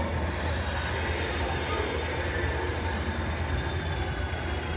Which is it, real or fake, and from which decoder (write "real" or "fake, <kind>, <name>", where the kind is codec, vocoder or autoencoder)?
real